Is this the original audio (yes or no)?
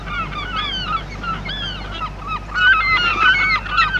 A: yes